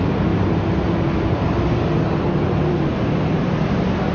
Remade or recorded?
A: recorded